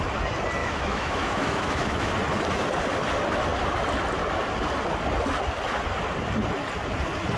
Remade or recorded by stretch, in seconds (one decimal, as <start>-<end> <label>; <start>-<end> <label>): 0.0-0.6 recorded; 0.6-2.1 remade; 2.1-7.4 recorded